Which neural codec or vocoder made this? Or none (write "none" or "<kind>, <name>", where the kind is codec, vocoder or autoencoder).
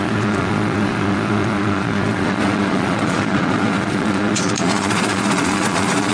vocoder, Vocos